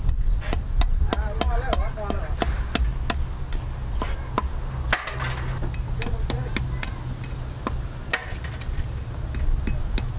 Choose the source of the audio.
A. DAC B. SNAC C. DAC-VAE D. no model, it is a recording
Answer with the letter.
D